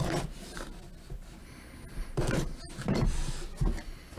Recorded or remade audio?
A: recorded